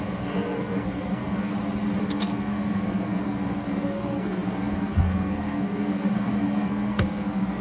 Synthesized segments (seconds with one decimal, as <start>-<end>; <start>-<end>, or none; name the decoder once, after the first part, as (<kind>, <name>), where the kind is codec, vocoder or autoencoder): 0.0-1.5 (codec, SNAC); 2.0-7.6